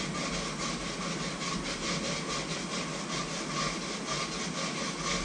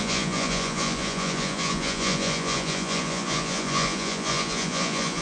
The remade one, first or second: second